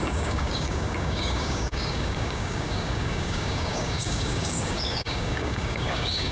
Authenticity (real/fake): fake